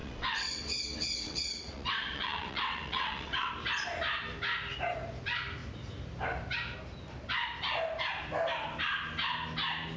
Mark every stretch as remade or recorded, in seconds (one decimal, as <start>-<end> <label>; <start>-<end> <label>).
0.0-3.5 remade; 3.5-10.0 recorded